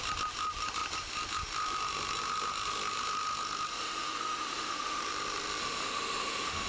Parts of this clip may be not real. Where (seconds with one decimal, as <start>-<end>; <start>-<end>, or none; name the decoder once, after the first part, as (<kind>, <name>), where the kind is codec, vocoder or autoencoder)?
3.7-5.0 (autoencoder, DAC-VAE); 5.6-6.7